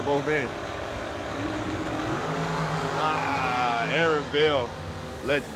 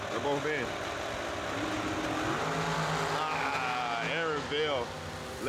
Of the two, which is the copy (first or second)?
first